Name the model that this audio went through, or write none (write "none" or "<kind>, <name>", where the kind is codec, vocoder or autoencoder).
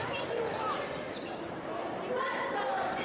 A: vocoder, BigVGAN v2